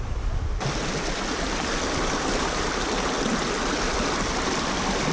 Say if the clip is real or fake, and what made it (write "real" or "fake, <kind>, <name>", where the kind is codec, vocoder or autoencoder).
real